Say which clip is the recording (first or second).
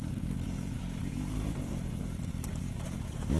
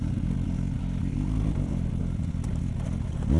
second